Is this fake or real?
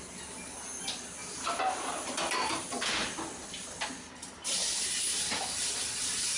real